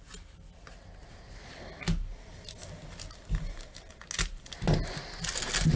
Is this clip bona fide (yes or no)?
yes